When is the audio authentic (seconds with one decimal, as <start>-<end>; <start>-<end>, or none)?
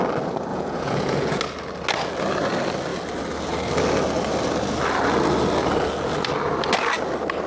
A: 0.0-0.5; 1.4-7.5